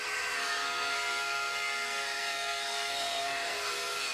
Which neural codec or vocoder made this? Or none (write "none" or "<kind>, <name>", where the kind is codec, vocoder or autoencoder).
codec, SNAC